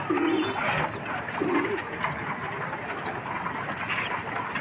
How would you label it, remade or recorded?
recorded